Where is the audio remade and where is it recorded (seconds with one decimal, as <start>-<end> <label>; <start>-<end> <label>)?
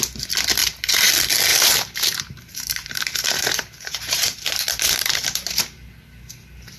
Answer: 0.0-0.6 recorded; 0.6-1.1 remade; 1.1-1.5 recorded; 1.5-5.6 remade; 5.6-6.8 recorded